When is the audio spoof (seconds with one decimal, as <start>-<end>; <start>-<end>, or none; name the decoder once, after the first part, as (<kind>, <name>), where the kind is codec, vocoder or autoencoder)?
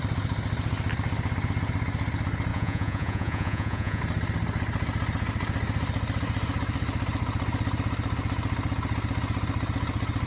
2.5-4.0 (vocoder, Vocos)